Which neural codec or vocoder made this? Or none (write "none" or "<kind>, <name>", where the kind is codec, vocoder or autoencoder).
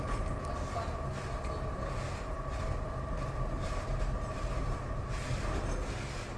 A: none